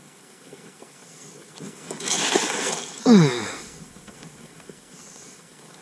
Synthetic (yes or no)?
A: yes